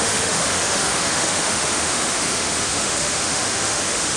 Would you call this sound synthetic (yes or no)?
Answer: yes